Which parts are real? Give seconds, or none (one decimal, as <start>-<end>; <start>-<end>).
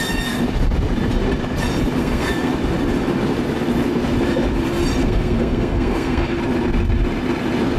0.0-2.0; 2.5-5.0; 6.4-7.8